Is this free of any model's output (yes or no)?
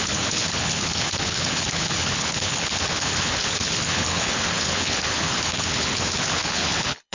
no